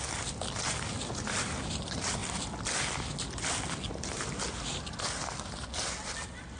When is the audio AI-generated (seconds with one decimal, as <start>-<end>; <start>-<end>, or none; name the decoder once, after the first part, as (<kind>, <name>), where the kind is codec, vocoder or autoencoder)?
none